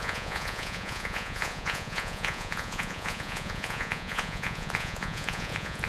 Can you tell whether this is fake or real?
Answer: fake